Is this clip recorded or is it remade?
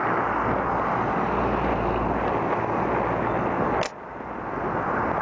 recorded